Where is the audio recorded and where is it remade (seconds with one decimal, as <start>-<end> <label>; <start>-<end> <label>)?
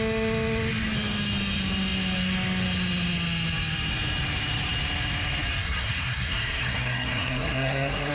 0.0-5.6 recorded; 5.6-8.1 remade